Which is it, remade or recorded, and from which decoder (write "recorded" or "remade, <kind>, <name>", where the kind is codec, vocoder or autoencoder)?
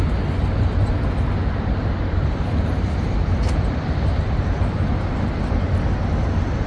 recorded